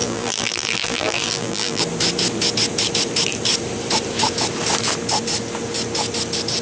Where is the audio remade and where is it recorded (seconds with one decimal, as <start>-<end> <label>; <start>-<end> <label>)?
0.0-1.8 remade; 1.8-6.6 recorded